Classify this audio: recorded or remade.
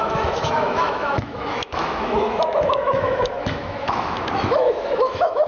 remade